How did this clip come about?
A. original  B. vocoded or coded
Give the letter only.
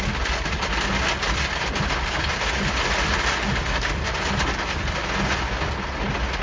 A